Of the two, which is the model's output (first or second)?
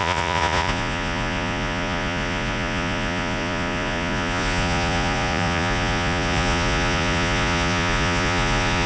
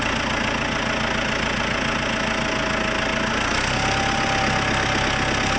first